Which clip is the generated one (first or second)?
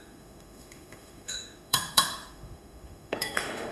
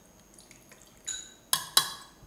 first